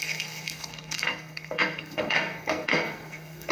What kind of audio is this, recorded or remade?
remade